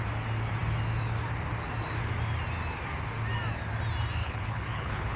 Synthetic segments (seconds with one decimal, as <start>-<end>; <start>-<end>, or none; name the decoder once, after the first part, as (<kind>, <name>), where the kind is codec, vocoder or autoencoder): 4.2-5.2 (codec, HILCodec)